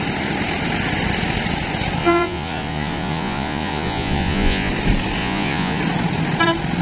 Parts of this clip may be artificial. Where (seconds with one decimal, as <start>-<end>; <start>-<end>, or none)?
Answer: 2.0-4.7; 5.2-5.8